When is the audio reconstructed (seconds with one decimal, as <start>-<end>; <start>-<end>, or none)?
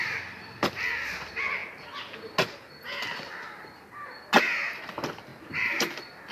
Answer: 5.3-6.3